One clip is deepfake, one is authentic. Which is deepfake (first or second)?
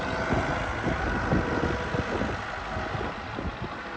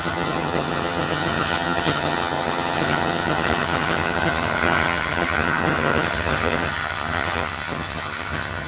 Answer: second